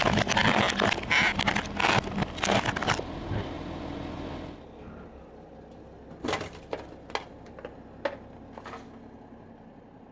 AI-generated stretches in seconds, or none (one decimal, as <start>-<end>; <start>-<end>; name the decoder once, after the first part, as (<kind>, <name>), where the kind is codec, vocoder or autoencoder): none